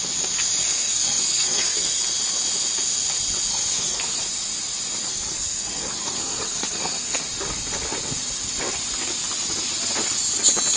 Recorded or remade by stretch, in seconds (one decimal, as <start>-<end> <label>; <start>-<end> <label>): 0.0-0.6 recorded; 0.6-2.0 remade; 2.0-3.5 recorded; 3.5-4.2 remade; 4.2-5.0 recorded; 5.0-7.2 remade; 7.2-10.8 recorded